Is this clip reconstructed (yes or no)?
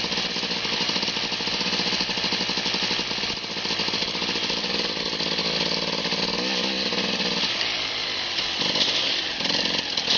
no